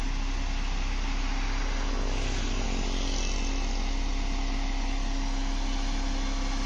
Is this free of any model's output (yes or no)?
yes